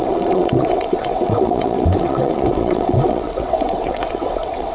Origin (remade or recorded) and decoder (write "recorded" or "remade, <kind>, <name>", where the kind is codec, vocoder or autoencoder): remade, vocoder, WaveNeXt